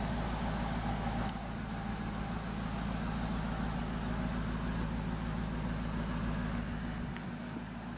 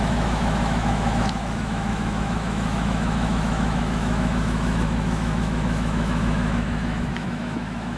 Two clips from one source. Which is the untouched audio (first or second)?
first